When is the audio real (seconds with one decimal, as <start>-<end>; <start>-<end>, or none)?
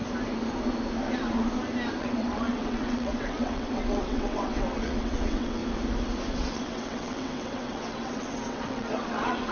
0.0-2.0; 5.6-6.3